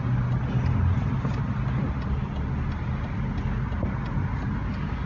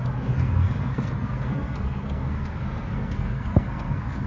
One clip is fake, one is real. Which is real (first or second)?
first